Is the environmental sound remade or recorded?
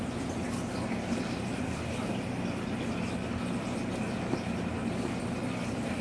recorded